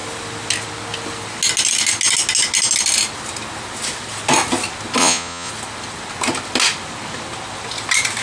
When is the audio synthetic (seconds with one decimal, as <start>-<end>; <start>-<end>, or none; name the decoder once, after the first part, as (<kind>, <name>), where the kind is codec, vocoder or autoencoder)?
5.0-5.5 (vocoder, Vocos)